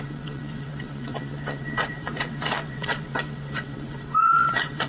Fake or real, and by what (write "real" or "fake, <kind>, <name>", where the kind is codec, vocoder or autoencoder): fake, vocoder, WaveNeXt